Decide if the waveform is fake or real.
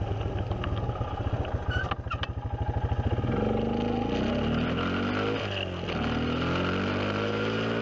real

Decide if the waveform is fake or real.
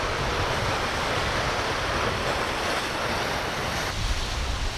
real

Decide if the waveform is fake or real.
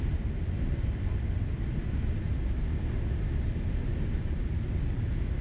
real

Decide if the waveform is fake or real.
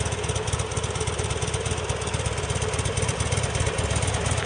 real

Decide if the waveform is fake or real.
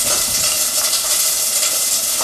real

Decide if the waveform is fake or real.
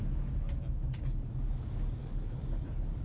real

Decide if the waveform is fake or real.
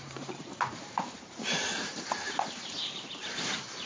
fake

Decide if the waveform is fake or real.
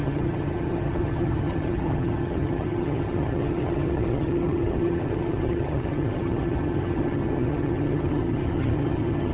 fake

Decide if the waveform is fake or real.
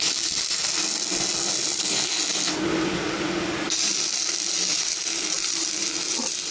real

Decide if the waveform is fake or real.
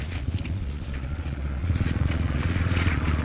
fake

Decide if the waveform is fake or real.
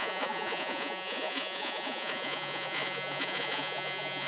fake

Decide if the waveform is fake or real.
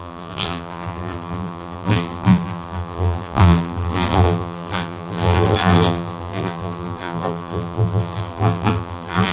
fake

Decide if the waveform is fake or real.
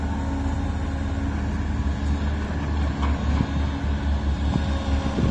real